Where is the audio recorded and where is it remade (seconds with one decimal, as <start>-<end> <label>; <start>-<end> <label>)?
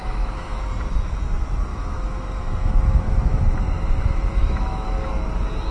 0.0-0.6 remade; 0.6-1.7 recorded; 1.7-5.1 remade; 5.1-5.7 recorded